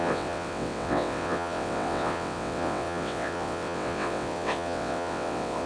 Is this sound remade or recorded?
remade